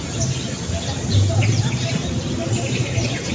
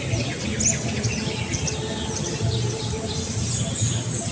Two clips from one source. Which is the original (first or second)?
second